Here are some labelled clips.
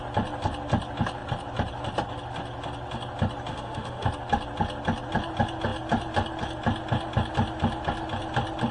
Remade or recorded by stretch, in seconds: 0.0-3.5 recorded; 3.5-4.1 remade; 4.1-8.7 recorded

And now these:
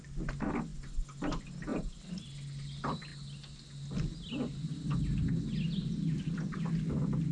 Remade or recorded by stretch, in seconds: 0.0-1.7 recorded; 1.7-2.3 remade; 2.3-7.3 recorded

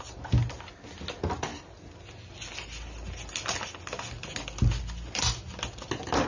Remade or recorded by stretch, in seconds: 0.0-6.3 recorded